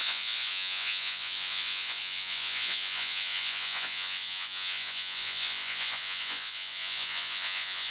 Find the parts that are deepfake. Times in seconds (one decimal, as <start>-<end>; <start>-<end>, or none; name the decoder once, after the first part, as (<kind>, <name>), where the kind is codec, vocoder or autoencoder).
0.0-7.9 (vocoder, Vocos)

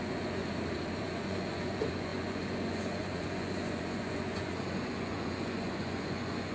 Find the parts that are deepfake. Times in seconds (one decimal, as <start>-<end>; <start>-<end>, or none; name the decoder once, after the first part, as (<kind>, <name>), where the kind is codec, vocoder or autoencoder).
0.0-0.4 (vocoder, Vocos); 1.0-6.5

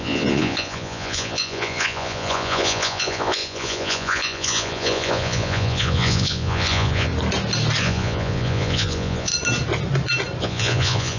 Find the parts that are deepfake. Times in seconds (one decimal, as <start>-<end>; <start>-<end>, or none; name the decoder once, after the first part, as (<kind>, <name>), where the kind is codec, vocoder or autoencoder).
0.0-7.1 (vocoder, Vocos); 7.8-9.3; 10.4-11.2

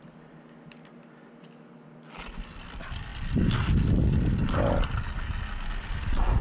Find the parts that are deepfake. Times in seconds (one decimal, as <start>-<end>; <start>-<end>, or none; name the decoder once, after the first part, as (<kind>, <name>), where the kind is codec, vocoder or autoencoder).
none